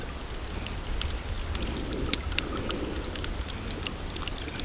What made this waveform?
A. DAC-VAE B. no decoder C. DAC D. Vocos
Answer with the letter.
B